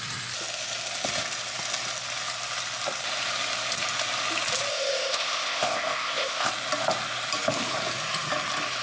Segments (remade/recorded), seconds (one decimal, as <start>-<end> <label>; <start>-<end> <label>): 0.0-4.7 recorded; 4.7-6.5 remade; 6.5-8.8 recorded